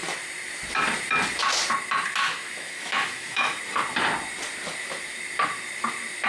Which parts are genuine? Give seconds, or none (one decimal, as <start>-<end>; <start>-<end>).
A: 0.0-2.2; 3.6-6.3